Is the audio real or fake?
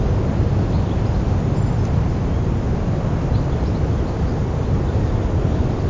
real